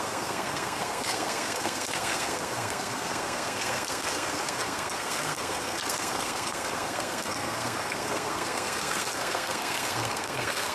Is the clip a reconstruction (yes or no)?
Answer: yes